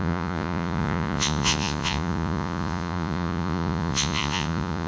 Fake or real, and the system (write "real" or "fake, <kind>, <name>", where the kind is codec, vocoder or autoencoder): fake, vocoder, Vocos